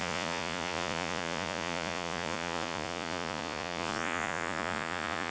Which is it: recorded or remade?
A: remade